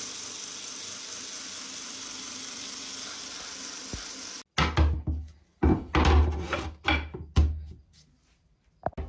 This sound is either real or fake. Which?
real